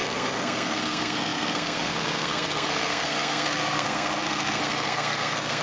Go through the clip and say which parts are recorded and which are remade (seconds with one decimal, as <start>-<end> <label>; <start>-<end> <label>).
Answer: 0.0-5.6 remade